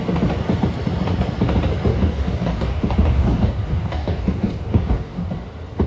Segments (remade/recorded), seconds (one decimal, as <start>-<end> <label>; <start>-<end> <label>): 0.0-1.9 recorded; 1.9-5.3 remade; 5.3-5.9 recorded

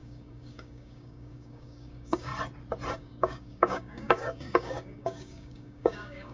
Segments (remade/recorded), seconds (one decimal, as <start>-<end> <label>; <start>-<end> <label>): 0.0-2.3 remade; 2.3-2.9 recorded; 2.9-6.3 remade

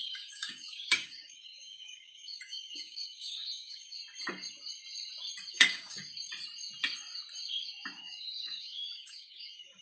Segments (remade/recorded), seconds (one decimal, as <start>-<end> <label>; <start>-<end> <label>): 0.0-4.0 remade; 4.0-5.5 recorded; 5.5-6.0 remade; 6.0-8.0 recorded; 8.0-9.8 remade

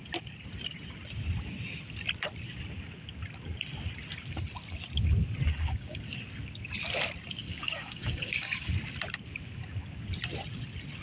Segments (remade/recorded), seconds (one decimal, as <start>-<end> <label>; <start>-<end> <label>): 0.0-5.5 recorded; 5.5-6.0 remade; 6.0-7.4 recorded; 7.4-8.7 remade; 8.7-11.0 recorded

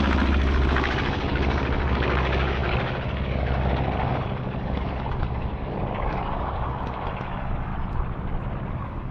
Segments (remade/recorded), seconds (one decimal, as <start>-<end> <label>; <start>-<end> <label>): 0.0-7.7 remade; 7.7-8.7 recorded; 8.7-9.1 remade

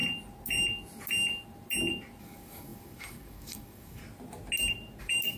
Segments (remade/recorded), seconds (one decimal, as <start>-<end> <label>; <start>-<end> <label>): 0.0-2.2 recorded; 2.2-4.0 remade; 4.0-5.0 recorded; 5.0-5.4 remade

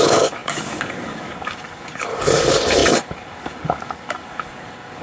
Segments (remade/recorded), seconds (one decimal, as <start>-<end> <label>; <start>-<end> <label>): 0.0-5.0 remade

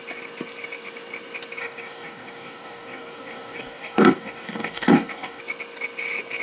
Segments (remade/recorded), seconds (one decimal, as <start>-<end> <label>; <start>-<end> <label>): 0.0-1.6 recorded; 1.6-5.4 remade; 5.4-6.4 recorded